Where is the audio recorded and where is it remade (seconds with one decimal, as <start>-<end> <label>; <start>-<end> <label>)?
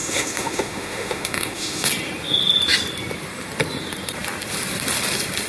0.0-1.9 remade; 1.9-5.5 recorded